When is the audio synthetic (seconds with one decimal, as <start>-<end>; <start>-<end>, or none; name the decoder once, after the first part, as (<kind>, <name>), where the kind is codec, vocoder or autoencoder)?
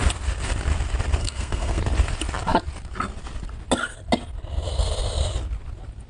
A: 1.2-1.8 (codec, SNAC)